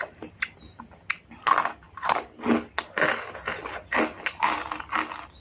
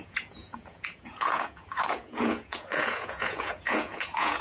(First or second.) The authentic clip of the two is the first